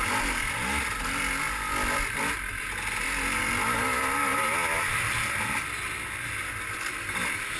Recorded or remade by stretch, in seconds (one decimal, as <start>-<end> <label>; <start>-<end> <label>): 0.0-7.6 recorded